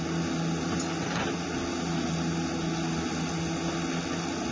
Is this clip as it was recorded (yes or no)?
yes